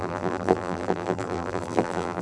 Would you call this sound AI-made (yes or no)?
yes